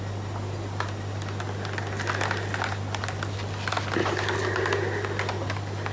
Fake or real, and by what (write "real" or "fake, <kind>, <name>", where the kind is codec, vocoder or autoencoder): real